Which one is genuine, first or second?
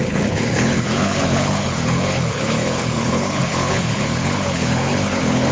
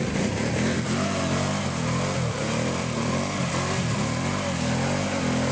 second